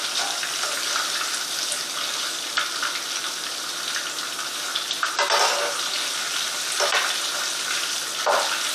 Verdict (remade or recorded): recorded